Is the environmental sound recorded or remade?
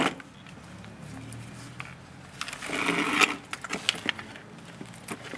recorded